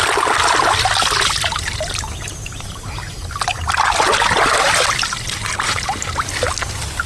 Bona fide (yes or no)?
yes